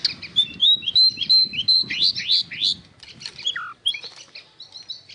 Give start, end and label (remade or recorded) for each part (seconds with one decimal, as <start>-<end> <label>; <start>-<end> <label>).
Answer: 0.0-5.1 recorded